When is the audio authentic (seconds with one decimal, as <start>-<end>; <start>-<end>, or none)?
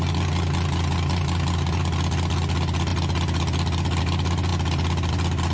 0.0-5.5